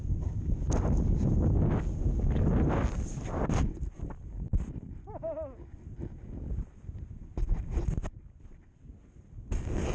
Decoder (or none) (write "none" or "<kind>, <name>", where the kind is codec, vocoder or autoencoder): none